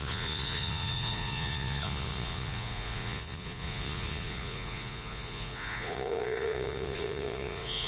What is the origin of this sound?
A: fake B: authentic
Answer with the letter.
A